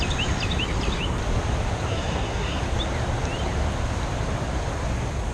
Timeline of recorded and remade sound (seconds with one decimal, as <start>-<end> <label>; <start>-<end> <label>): 0.0-1.9 recorded; 1.9-2.6 remade; 2.6-5.3 recorded